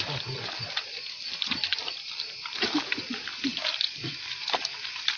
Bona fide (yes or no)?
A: yes